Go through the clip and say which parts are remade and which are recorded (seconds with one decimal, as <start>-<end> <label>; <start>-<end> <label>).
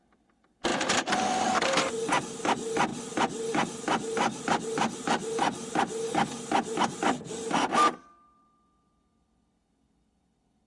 0.0-0.7 recorded; 0.7-1.8 remade; 1.8-10.7 recorded